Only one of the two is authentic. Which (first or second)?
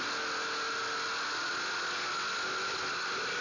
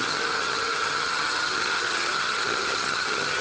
first